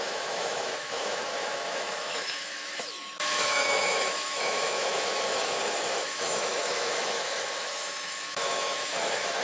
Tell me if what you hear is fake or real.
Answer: fake